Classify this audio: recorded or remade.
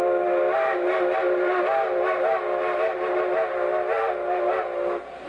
remade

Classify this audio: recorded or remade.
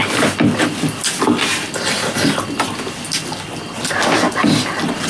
recorded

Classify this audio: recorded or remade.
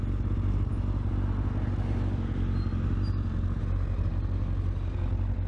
recorded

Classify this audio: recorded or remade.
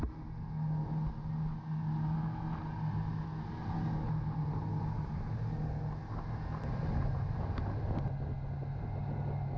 recorded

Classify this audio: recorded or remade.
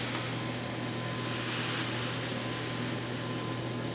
recorded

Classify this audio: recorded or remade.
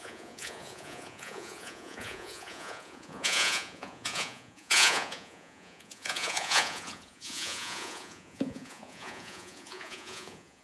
remade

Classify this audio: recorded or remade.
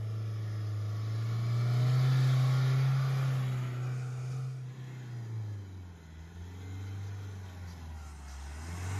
recorded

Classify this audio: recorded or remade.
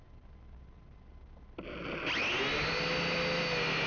recorded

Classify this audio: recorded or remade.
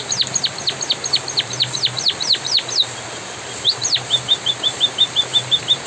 recorded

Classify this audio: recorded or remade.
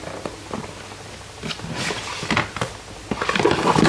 recorded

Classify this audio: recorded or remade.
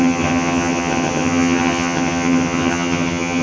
remade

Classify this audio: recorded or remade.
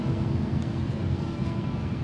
remade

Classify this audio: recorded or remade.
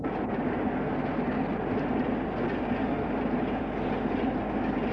recorded